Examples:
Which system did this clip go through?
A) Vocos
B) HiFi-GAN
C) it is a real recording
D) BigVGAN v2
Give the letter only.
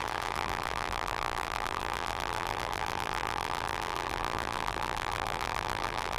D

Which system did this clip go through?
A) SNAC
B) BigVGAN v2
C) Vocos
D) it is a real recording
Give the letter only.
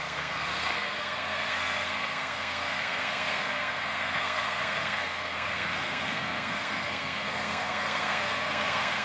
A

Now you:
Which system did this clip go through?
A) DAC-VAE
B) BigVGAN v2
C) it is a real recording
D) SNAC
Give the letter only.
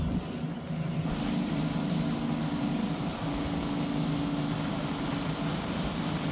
C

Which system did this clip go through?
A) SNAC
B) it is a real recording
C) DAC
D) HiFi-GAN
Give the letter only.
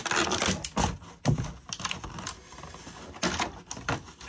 B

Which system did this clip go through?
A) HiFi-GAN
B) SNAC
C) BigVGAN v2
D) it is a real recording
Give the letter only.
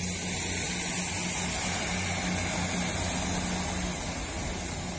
D